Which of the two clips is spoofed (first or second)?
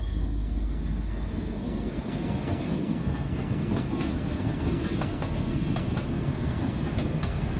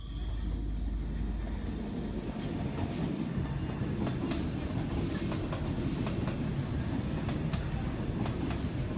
first